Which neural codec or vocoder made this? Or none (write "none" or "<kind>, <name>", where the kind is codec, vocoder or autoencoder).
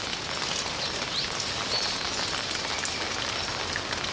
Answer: none